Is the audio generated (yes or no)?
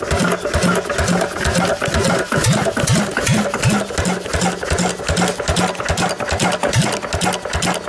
no